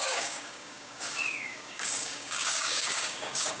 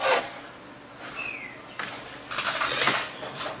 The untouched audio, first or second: second